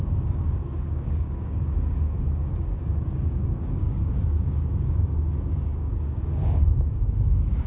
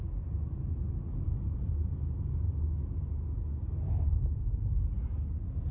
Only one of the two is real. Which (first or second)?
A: second